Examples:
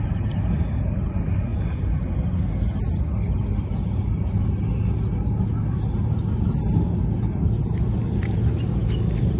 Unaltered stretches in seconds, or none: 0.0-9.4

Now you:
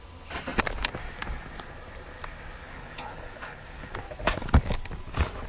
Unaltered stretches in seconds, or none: 0.0-2.6; 3.9-5.5

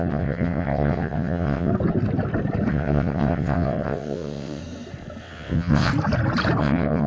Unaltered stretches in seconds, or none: 1.7-2.7; 4.6-5.2; 5.9-6.6

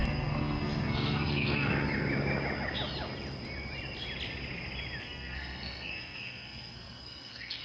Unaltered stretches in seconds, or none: 1.7-5.0